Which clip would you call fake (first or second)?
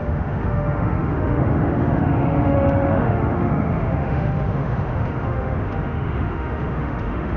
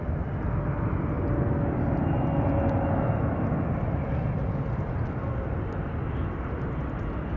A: first